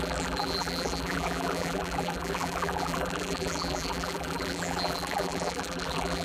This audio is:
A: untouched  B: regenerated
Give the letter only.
B